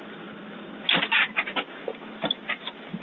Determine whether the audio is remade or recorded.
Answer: recorded